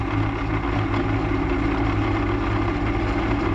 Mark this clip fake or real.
real